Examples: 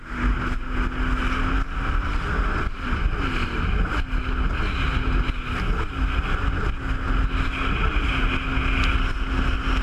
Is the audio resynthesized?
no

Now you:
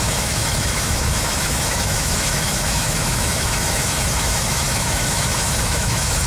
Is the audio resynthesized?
yes